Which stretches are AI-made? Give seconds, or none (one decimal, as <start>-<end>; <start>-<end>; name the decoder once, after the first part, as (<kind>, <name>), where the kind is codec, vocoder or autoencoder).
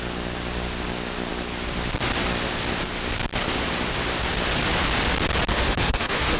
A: 5.5-6.4 (autoencoder, DAC-VAE)